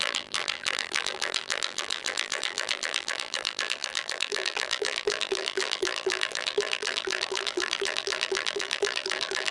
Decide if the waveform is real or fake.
fake